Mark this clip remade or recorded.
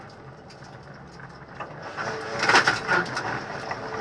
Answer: recorded